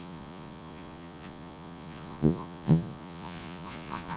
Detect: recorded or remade remade